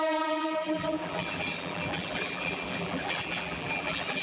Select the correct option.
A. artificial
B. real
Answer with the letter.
A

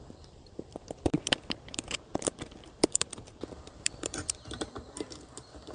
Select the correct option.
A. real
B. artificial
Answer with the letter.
B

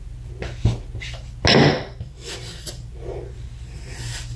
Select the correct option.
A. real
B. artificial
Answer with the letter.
A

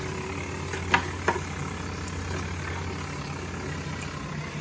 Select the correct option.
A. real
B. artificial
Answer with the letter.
A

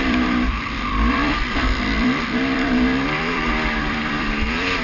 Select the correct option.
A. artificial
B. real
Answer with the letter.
A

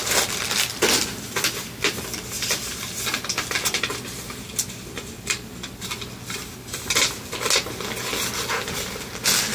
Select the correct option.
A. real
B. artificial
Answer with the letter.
A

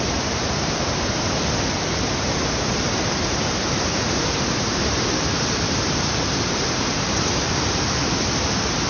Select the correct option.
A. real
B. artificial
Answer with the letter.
B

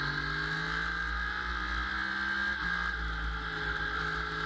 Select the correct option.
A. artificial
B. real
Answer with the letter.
B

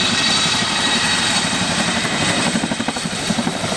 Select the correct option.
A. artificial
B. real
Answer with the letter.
A